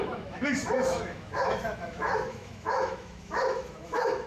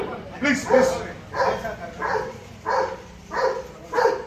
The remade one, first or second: first